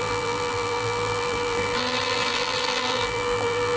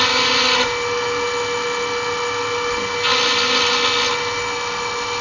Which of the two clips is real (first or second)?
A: second